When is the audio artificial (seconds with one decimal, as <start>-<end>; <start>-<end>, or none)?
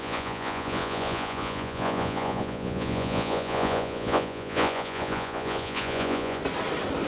0.0-6.4